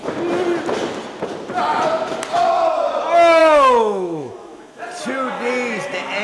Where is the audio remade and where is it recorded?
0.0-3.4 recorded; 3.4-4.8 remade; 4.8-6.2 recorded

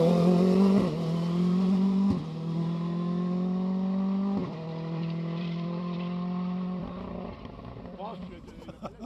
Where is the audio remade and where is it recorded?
0.0-4.4 recorded; 4.4-7.6 remade; 7.6-8.1 recorded; 8.1-8.7 remade; 8.7-9.1 recorded

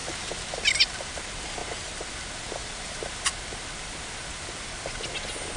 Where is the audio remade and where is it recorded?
0.0-5.6 recorded

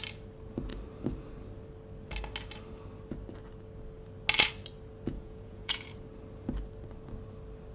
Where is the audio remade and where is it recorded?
0.0-5.1 recorded; 5.1-5.8 remade; 5.8-7.7 recorded